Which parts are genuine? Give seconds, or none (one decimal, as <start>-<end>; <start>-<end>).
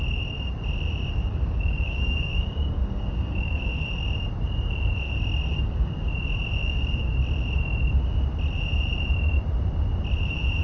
0.0-1.2; 3.7-5.5; 6.1-6.6; 7.1-10.6